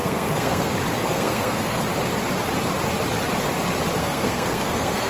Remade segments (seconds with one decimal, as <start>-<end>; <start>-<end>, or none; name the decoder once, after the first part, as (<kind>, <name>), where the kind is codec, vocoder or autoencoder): 0.0-0.7 (codec, SNAC); 1.1-1.8; 4.0-5.1